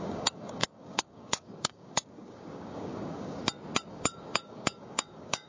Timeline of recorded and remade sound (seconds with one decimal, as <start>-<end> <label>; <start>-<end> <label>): 0.0-3.4 remade; 3.4-3.9 recorded; 3.9-5.5 remade